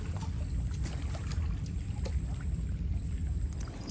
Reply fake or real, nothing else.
real